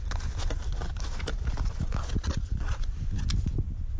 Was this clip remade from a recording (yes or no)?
no